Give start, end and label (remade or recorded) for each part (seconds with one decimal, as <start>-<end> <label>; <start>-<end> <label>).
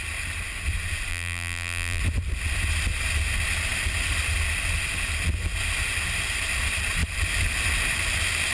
0.0-1.1 recorded; 1.1-2.0 remade; 2.0-8.5 recorded